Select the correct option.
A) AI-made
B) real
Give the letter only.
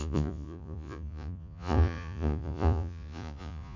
A